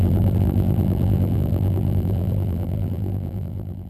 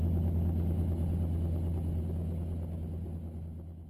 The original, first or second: second